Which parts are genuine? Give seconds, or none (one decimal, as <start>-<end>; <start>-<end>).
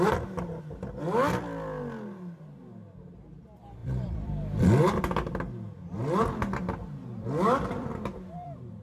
0.0-3.8; 5.0-7.8